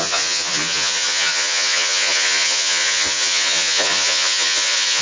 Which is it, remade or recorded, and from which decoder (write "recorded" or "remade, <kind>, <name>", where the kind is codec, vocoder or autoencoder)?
remade, vocoder, Vocos